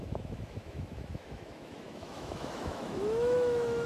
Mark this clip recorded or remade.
remade